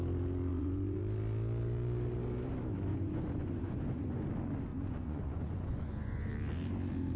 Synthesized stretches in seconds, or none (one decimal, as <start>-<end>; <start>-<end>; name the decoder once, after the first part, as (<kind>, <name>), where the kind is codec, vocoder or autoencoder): 0.5-1.0 (vocoder, Vocos); 2.9-4.3; 4.7-6.3